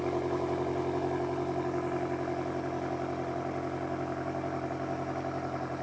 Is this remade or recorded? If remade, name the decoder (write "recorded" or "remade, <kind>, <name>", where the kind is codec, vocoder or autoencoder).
recorded